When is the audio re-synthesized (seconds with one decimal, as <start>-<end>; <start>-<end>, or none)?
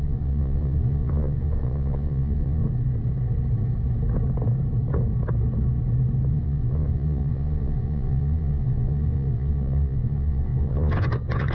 0.0-2.6; 6.3-11.5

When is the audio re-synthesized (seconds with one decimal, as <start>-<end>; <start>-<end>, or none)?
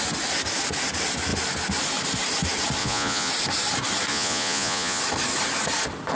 2.8-3.3; 4.1-5.0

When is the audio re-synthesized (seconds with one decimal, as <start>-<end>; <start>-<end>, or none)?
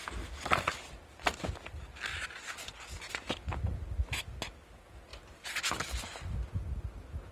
none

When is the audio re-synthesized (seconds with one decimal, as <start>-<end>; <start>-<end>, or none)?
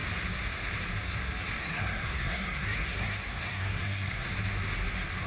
1.6-4.3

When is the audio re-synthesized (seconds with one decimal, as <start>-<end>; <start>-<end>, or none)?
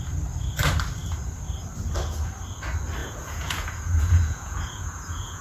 3.0-5.4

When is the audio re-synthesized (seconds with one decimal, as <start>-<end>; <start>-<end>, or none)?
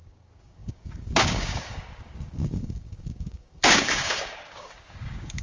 0.0-5.4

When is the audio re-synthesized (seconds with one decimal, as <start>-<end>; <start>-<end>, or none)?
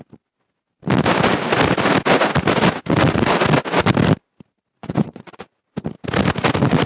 4.8-5.7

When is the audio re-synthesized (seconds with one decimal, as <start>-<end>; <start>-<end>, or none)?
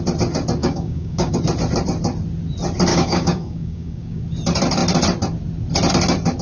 0.6-1.4; 2.9-4.2